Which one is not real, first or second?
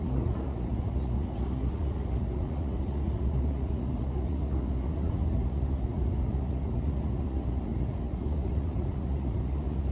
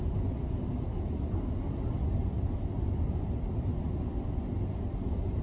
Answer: first